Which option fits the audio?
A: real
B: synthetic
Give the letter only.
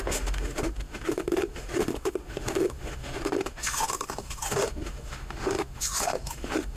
B